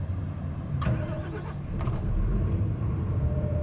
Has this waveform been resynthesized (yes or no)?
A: yes